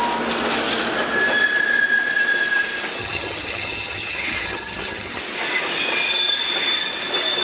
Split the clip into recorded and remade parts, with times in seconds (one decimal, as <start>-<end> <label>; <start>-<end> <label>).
0.0-3.0 recorded; 3.0-5.2 remade; 5.2-7.4 recorded